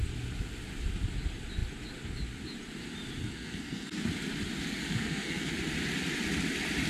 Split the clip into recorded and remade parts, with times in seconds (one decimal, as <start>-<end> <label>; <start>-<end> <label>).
0.0-3.2 recorded; 3.2-4.0 remade; 4.0-4.8 recorded; 4.8-5.5 remade; 5.5-6.9 recorded